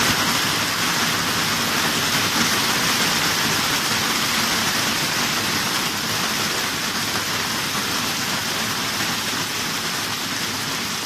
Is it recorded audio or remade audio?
recorded